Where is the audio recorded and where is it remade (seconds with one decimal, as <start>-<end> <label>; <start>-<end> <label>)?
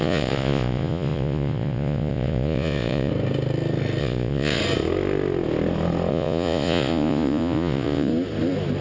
0.0-3.1 remade; 3.1-4.0 recorded; 4.0-4.6 remade; 4.6-6.1 recorded; 6.1-8.1 remade; 8.1-8.8 recorded